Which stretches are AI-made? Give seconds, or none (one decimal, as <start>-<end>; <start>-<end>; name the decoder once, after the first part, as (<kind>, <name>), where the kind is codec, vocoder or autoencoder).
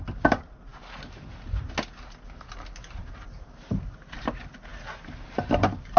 none